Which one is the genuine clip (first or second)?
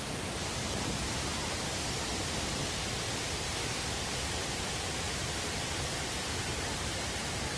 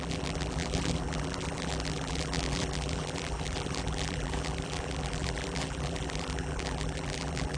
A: first